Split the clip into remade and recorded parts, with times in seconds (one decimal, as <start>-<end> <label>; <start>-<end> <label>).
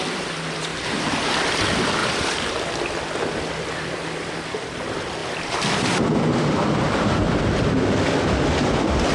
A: 0.0-0.7 recorded; 0.7-1.6 remade; 1.6-2.0 recorded; 2.0-2.6 remade; 2.6-9.1 recorded